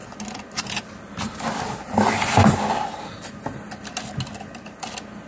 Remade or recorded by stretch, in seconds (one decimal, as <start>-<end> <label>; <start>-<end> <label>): 0.0-5.3 recorded